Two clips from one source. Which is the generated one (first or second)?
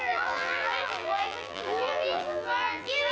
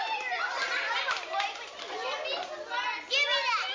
first